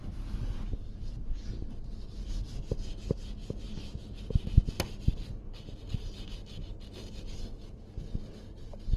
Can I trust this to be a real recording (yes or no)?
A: yes